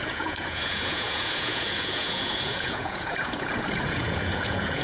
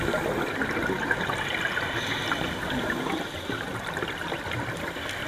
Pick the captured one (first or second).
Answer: second